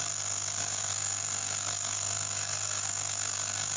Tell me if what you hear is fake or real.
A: fake